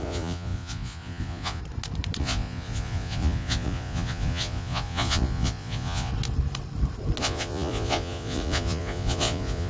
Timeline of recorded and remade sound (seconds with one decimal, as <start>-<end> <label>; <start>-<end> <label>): 0.0-1.6 remade; 1.6-2.2 recorded; 2.2-6.1 remade; 6.1-7.2 recorded; 7.2-9.7 remade